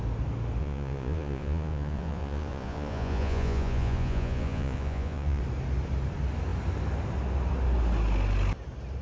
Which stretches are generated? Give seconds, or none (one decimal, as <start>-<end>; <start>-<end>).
0.6-5.4